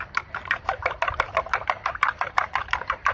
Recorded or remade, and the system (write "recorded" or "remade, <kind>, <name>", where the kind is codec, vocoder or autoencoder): remade, vocoder, BigVGAN v2